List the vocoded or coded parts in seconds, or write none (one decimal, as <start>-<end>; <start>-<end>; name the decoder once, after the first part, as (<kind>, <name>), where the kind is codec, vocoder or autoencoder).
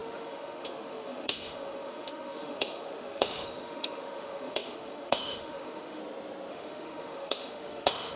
0.0-6.0 (autoencoder, DAC-VAE); 6.5-8.2